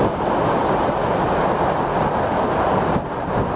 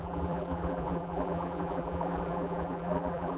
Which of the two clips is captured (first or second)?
first